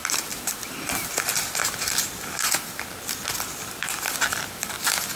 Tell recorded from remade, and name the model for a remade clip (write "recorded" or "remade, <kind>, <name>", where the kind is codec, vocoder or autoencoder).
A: remade, vocoder, BigVGAN v2